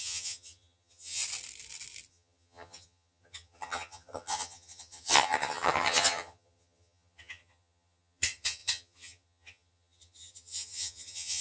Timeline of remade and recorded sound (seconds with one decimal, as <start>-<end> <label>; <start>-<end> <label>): 0.0-1.2 remade; 1.2-2.1 recorded; 2.1-11.4 remade